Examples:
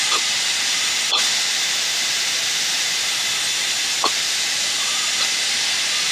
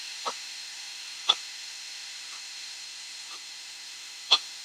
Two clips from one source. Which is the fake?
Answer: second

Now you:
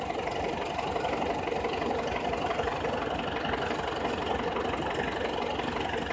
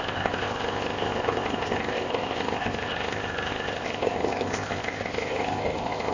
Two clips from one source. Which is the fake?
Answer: second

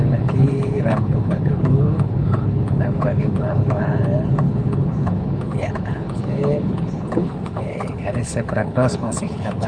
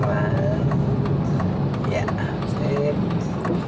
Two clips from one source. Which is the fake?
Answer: first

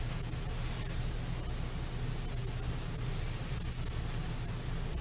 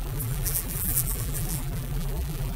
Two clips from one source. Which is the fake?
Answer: second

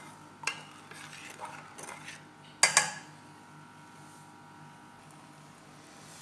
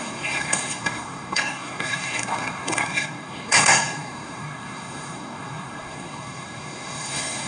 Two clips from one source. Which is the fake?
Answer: second